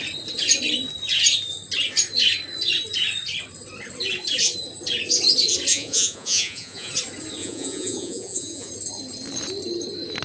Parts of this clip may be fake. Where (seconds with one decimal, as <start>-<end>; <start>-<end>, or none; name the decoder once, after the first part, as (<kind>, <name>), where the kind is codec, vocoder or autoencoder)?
5.7-6.9 (vocoder, Vocos); 7.4-8.7